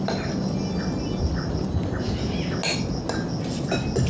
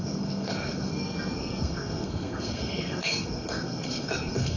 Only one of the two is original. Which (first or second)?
first